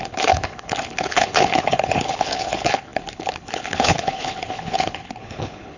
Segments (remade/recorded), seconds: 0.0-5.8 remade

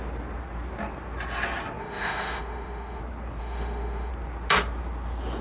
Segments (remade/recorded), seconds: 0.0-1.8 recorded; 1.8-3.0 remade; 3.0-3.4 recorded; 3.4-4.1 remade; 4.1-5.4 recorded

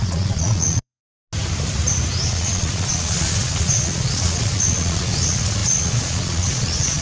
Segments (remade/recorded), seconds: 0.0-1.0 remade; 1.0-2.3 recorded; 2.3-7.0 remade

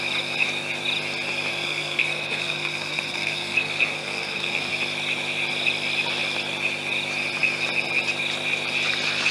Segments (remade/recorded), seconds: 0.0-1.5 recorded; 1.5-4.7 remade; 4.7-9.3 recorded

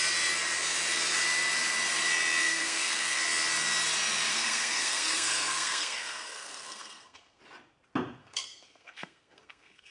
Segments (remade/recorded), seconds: 0.0-2.4 recorded; 2.4-3.2 remade; 3.2-4.3 recorded; 4.3-7.4 remade; 7.4-8.2 recorded; 8.2-9.9 remade